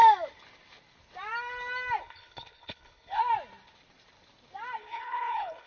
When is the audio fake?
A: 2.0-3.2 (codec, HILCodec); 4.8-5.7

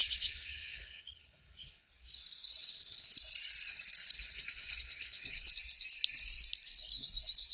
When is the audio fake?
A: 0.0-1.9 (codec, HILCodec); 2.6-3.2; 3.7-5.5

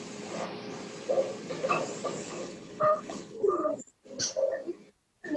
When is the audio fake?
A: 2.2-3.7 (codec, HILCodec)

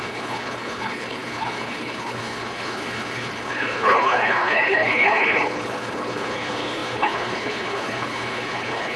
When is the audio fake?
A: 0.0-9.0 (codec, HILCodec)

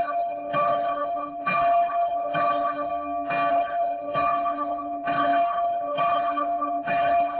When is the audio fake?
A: 0.0-2.9 (codec, HILCodec); 3.5-7.4